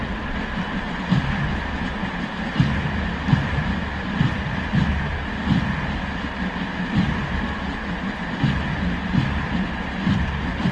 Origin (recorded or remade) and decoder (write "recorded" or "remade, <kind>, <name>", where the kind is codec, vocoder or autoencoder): recorded